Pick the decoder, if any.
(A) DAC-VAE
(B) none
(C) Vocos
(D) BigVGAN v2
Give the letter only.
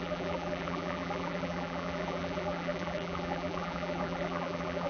D